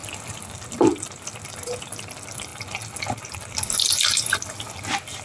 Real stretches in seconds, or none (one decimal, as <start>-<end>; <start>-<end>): 0.0-5.2